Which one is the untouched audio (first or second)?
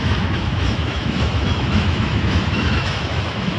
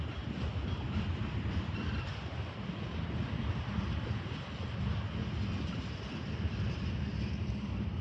second